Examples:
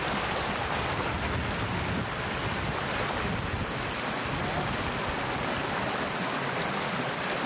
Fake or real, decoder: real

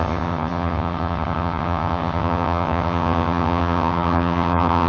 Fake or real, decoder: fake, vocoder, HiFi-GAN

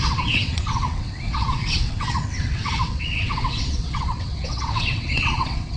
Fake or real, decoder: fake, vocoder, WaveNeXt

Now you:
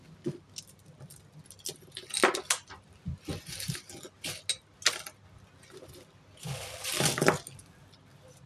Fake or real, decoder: real